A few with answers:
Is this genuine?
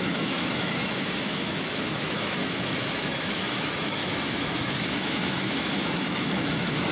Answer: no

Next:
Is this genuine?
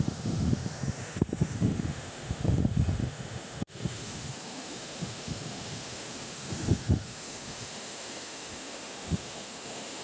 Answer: no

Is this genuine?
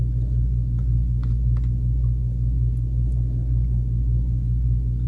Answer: yes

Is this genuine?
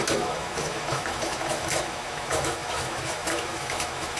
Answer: no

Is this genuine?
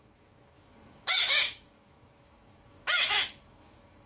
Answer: no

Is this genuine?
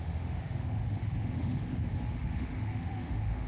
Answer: no